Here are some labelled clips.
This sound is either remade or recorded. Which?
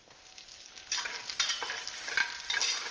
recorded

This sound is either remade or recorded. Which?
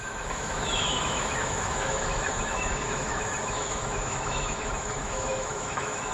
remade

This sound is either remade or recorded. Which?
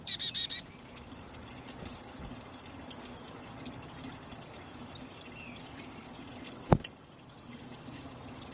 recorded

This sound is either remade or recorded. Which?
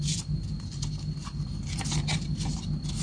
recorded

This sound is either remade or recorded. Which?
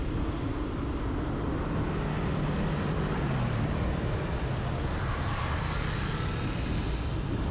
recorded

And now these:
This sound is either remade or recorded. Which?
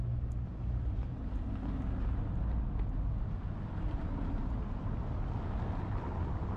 recorded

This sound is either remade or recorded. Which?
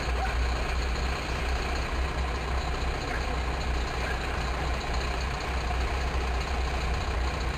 recorded